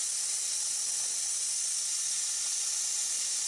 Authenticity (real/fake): real